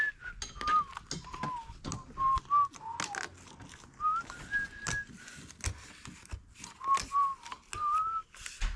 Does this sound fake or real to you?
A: real